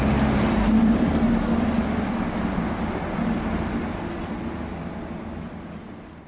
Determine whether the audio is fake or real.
real